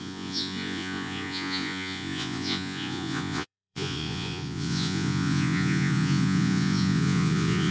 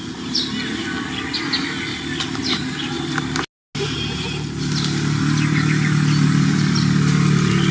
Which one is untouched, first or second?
second